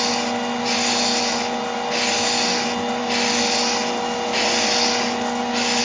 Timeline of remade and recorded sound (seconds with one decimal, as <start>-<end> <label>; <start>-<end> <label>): 0.0-5.8 recorded